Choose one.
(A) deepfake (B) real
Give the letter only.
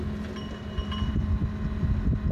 B